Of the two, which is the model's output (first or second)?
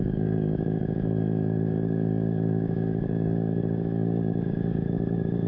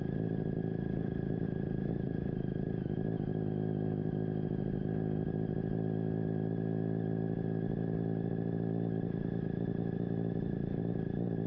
first